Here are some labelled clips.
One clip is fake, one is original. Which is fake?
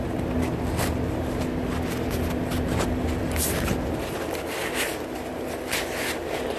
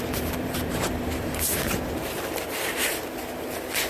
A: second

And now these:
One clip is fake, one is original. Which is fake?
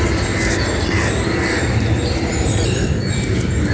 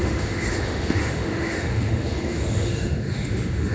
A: second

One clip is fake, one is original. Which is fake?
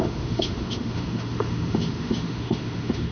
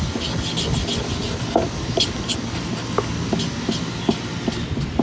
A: first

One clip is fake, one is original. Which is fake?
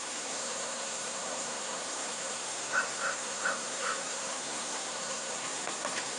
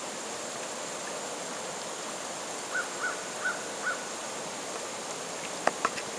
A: first